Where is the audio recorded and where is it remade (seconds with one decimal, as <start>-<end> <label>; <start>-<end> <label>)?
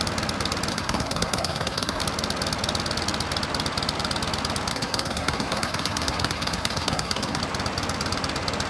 0.0-0.7 recorded; 0.7-2.0 remade; 2.0-4.7 recorded; 4.7-7.4 remade; 7.4-8.7 recorded